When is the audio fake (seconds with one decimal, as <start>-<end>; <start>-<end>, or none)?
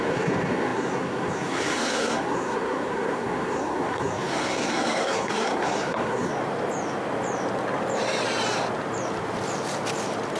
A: 0.0-6.3